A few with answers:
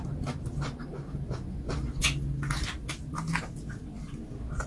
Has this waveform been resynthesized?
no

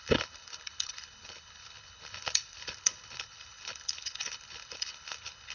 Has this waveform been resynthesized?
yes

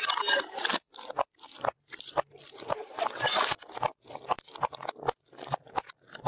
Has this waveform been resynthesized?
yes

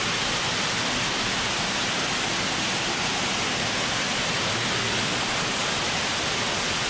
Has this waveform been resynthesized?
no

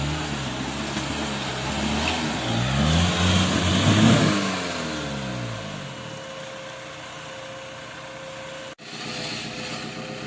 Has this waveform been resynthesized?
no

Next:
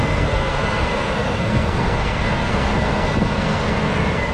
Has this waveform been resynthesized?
yes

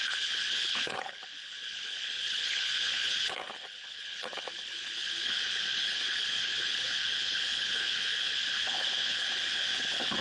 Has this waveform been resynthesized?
yes